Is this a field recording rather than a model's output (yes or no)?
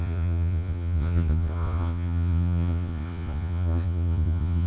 no